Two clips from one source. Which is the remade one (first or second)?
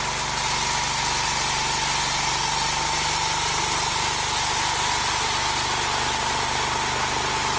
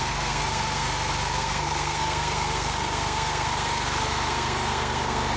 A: second